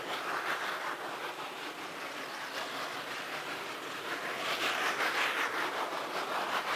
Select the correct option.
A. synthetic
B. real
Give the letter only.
A